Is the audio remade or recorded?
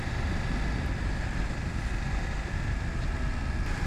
recorded